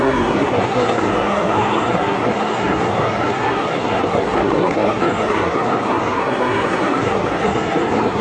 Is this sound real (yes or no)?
no